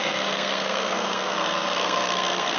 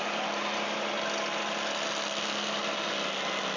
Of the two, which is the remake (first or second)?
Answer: first